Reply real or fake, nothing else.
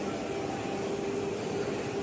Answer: real